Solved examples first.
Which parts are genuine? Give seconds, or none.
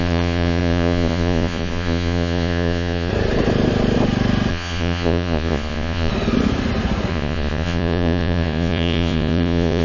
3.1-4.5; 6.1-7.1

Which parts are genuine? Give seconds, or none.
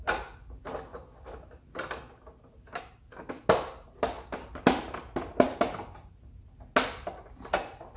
0.0-8.0